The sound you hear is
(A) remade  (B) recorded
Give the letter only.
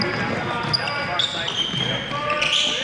B